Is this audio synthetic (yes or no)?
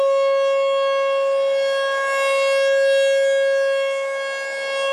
no